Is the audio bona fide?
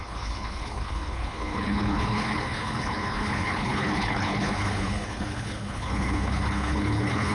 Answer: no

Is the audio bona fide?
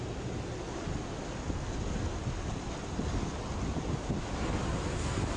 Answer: yes